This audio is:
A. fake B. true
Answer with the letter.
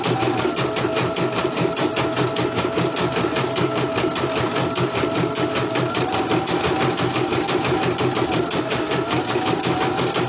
B